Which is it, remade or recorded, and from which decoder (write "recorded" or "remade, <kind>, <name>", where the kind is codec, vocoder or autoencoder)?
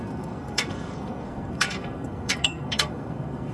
remade, codec, SNAC